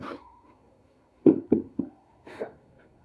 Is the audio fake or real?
fake